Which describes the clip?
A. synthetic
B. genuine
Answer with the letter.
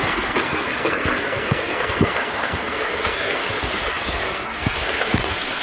A